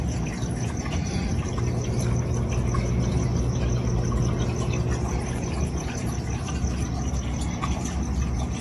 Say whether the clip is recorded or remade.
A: recorded